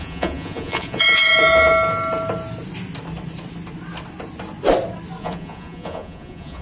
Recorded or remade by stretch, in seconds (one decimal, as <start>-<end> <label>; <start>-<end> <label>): 0.0-1.7 remade; 1.7-5.2 recorded; 5.2-6.6 remade